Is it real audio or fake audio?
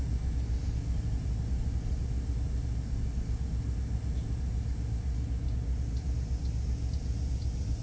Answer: real